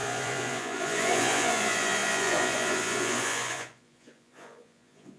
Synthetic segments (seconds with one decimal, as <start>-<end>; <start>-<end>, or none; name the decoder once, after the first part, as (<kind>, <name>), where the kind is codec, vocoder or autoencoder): 0.0-5.2 (vocoder, Vocos)